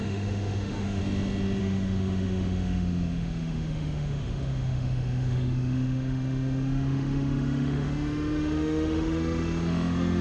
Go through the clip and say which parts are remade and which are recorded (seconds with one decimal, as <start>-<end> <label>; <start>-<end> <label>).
0.0-1.0 remade; 1.0-1.6 recorded; 1.6-10.2 remade

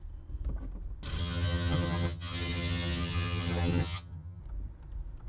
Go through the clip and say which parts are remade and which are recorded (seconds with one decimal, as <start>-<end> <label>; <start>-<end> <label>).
0.0-1.2 recorded; 1.2-4.4 remade; 4.4-5.3 recorded

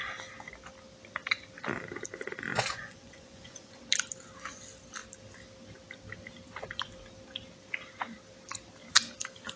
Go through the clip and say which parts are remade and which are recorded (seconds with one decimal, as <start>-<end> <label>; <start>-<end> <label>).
0.0-2.5 recorded; 2.5-3.8 remade; 3.8-9.6 recorded

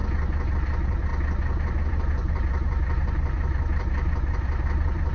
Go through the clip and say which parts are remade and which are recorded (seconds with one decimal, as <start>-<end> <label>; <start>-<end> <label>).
0.0-0.5 recorded; 0.5-1.1 remade; 1.1-1.9 recorded; 1.9-5.1 remade